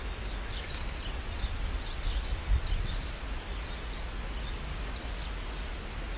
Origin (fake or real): real